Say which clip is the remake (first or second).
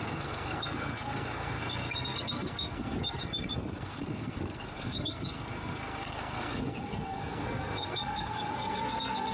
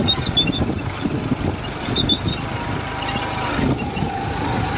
first